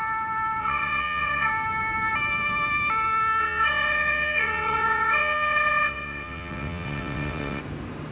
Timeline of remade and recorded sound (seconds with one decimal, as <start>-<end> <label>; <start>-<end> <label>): 0.0-0.6 recorded; 0.6-1.5 remade; 1.5-3.4 recorded; 3.4-7.6 remade; 7.6-8.1 recorded